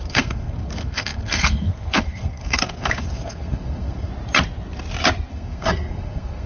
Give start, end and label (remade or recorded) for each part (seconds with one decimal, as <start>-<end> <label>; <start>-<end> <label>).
0.0-4.1 remade; 4.1-5.3 recorded; 5.3-6.5 remade